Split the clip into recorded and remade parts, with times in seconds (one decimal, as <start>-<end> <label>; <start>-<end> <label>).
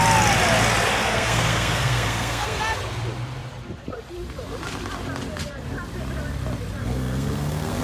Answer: 0.0-1.0 recorded; 1.0-2.6 remade; 2.6-6.8 recorded; 6.8-7.8 remade